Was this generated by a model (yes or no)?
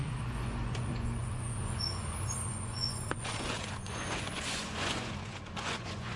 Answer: yes